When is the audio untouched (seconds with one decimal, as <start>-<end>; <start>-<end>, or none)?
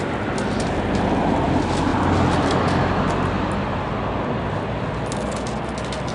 0.0-6.1